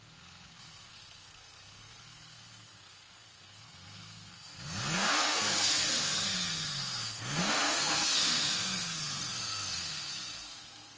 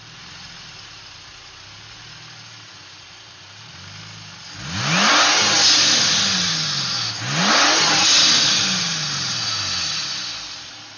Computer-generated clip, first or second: first